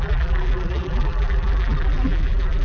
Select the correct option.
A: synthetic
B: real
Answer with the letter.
A